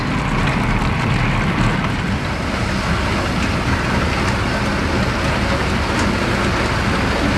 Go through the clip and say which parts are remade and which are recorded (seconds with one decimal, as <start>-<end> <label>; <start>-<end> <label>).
0.0-7.4 recorded